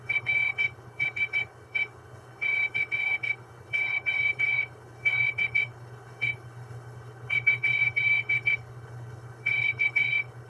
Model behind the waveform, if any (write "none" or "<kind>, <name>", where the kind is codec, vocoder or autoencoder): codec, HILCodec